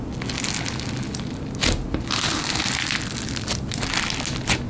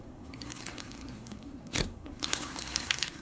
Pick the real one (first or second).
first